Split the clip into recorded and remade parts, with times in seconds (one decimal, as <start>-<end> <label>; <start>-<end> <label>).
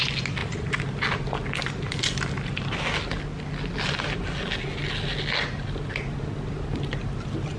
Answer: 0.0-7.6 recorded